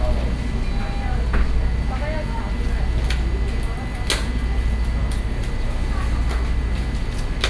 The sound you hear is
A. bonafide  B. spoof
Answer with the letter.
A